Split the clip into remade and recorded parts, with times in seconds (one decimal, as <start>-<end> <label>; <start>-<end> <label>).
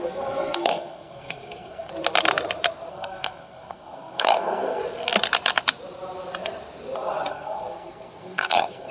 0.0-1.9 remade; 1.9-2.9 recorded; 2.9-4.8 remade; 4.8-7.3 recorded; 7.3-8.9 remade